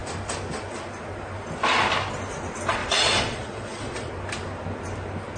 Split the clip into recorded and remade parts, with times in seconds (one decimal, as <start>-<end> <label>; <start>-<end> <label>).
0.0-2.8 recorded; 2.8-4.1 remade; 4.1-5.4 recorded